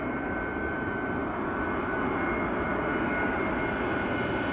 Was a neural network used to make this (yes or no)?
no